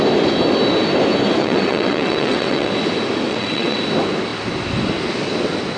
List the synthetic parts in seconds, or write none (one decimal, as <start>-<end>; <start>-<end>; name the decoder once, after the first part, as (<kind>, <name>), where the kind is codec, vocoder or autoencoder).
1.4-2.7 (vocoder, WaveNeXt); 3.3-3.8